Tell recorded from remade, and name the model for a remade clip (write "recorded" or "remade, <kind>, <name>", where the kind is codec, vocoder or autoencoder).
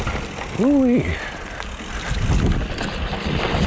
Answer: recorded